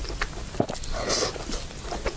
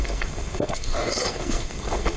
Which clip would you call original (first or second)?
first